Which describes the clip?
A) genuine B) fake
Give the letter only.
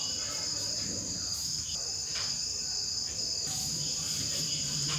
B